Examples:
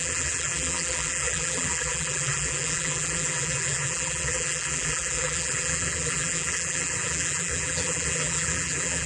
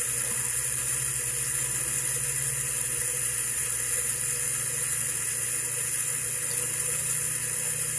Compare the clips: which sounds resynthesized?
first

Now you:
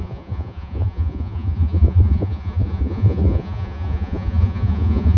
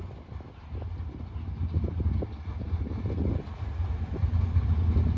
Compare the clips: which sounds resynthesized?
first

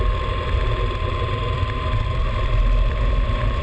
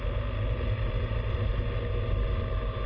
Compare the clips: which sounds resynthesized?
first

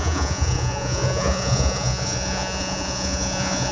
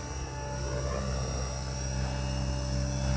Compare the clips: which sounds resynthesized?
first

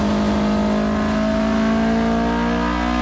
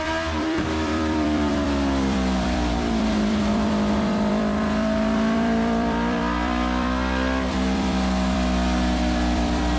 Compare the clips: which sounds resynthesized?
second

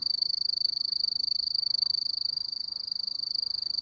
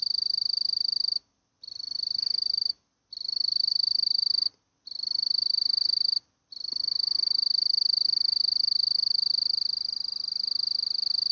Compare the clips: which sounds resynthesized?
first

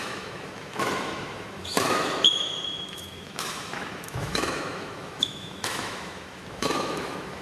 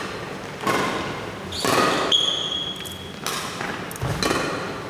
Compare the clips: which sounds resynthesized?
first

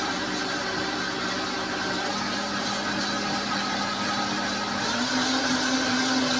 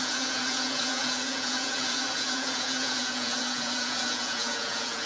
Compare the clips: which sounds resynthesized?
second